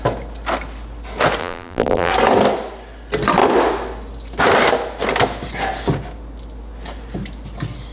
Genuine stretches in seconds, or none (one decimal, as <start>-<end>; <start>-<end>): 0.0-1.4; 2.1-7.9